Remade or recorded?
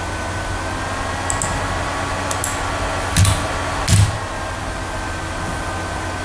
recorded